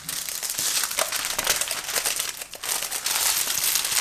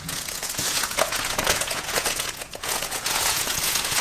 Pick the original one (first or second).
first